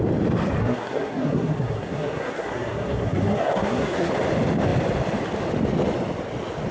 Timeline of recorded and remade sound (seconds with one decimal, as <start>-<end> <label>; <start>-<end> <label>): 0.0-0.6 recorded; 0.6-4.1 remade; 4.1-6.7 recorded